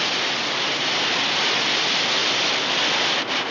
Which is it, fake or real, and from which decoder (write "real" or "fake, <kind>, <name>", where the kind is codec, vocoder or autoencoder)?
real